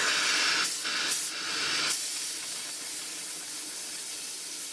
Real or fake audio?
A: real